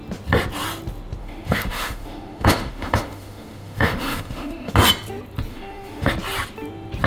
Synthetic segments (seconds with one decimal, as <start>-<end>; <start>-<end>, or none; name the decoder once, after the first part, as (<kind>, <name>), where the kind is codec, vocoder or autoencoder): 1.2-4.7 (autoencoder, DAC-VAE); 5.5-6.1